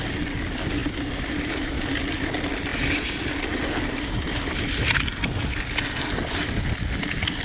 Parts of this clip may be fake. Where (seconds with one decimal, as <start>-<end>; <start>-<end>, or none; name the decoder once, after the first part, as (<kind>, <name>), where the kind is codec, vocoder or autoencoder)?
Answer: none

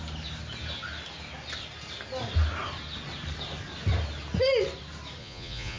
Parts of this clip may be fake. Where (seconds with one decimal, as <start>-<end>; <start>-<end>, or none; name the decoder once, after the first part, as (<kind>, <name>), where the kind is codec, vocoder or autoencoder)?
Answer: 5.2-5.8 (vocoder, Vocos)